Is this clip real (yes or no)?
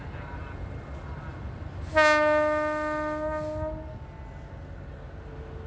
yes